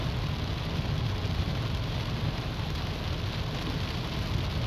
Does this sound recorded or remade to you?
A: recorded